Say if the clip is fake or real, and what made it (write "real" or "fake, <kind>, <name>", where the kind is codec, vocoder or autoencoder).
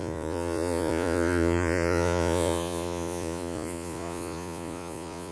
fake, vocoder, Vocos